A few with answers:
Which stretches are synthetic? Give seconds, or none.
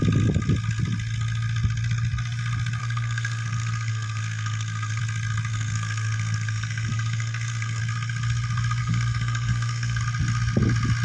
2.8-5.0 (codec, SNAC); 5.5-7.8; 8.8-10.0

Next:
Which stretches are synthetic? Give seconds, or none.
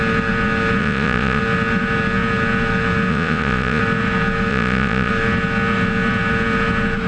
0.8-1.4 (vocoder, Vocos); 3.1-3.8; 4.5-5.1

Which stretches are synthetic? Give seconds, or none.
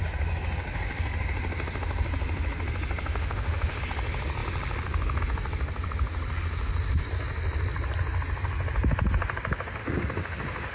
3.1-3.8 (autoencoder, DAC-VAE); 9.8-10.7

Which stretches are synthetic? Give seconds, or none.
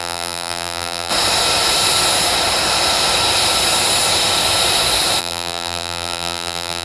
0.0-1.1 (vocoder, BigVGAN v2); 5.2-6.8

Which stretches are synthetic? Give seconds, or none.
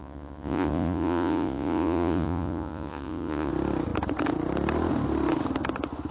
0.0-3.5 (vocoder, Vocos)